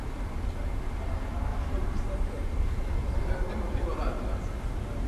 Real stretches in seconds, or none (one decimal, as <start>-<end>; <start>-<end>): 0.0-1.5; 4.4-5.1